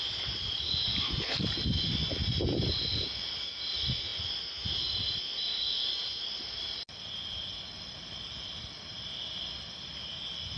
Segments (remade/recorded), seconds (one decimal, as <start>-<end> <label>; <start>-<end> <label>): 0.0-10.6 recorded